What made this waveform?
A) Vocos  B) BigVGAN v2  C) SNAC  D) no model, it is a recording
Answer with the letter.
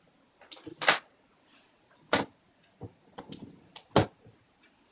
D